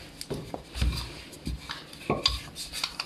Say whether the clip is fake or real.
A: real